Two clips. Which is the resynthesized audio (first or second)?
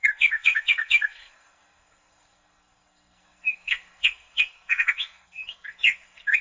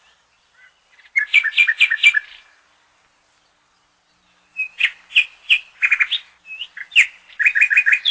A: first